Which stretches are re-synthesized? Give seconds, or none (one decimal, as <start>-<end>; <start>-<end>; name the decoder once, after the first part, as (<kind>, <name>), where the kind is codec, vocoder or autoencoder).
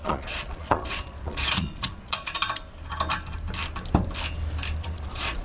0.0-2.4 (vocoder, Vocos); 4.8-5.4